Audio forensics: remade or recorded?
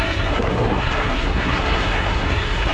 remade